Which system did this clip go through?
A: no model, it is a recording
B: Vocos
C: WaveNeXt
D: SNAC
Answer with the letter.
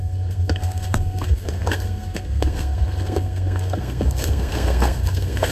D